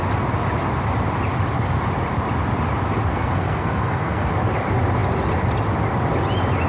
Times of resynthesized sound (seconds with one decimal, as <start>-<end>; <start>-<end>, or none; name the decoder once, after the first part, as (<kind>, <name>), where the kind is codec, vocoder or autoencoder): 3.1-4.3 (codec, SNAC)